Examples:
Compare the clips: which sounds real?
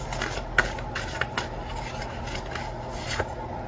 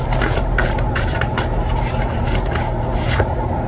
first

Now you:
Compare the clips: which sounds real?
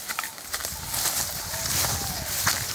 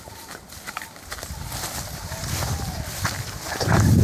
first